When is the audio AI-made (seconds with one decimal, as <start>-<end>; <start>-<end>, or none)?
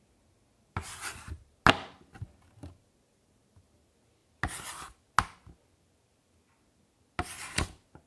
none